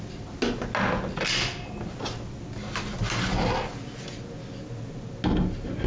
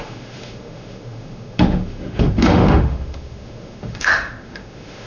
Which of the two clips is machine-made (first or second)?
second